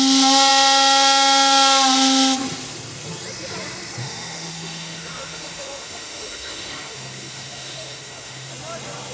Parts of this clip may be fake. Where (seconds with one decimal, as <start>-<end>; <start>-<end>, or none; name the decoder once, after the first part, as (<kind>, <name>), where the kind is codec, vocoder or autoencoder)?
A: 4.0-8.5 (autoencoder, DAC-VAE)